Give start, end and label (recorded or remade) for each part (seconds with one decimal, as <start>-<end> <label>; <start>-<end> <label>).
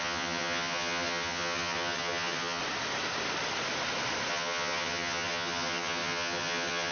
0.0-2.6 remade; 2.6-4.3 recorded; 4.3-6.9 remade